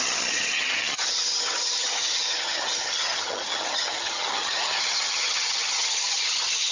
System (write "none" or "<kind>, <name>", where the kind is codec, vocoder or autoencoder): vocoder, HiFi-GAN